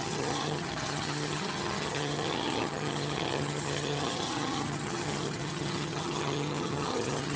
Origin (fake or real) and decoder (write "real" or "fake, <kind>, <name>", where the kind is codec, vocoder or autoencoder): fake, vocoder, HiFi-GAN